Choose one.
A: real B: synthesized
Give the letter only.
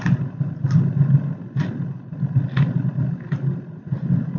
A